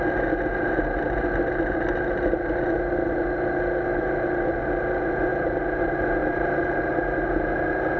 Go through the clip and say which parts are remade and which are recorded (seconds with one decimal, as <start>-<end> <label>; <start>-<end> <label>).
0.0-0.5 recorded; 0.5-1.2 remade; 1.2-3.9 recorded; 3.9-4.6 remade; 4.6-6.2 recorded; 6.2-6.9 remade; 6.9-8.0 recorded